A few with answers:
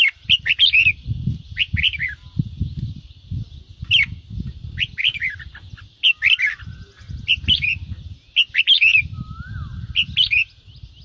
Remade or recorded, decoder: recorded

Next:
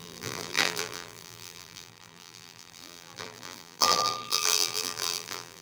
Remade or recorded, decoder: remade, vocoder, BigVGAN v2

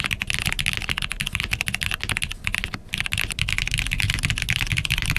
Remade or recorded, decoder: recorded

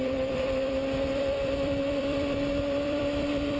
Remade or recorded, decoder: remade, vocoder, BigVGAN v2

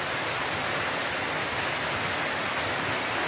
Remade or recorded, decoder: remade, vocoder, BigVGAN v2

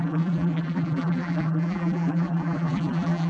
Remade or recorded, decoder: remade, vocoder, BigVGAN v2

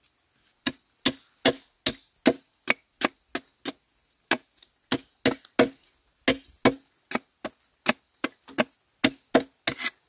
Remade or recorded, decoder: recorded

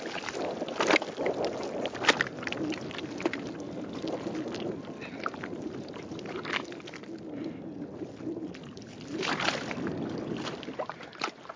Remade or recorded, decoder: recorded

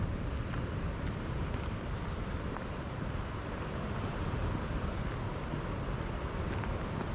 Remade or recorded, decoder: remade, vocoder, BigVGAN v2